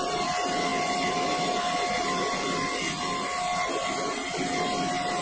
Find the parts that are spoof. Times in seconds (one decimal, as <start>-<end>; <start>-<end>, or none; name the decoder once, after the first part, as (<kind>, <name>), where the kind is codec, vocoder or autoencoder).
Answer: none

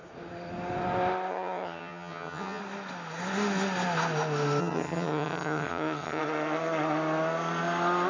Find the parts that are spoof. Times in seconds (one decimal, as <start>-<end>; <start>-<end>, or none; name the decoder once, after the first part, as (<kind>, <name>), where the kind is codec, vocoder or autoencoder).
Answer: 1.3-2.6 (vocoder, HiFi-GAN); 4.6-6.2

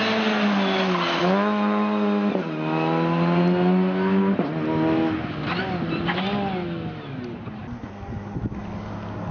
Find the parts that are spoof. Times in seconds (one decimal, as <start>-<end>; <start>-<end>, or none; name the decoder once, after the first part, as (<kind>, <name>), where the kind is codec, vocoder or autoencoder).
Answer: none

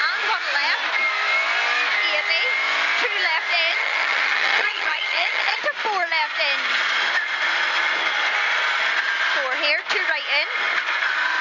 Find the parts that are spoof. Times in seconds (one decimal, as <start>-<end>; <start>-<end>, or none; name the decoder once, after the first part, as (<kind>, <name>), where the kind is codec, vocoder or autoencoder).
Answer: 3.7-5.6 (vocoder, HiFi-GAN)

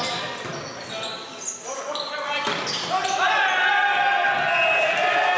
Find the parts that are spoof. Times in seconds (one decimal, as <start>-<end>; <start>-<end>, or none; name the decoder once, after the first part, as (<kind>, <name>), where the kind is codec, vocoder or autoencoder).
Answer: none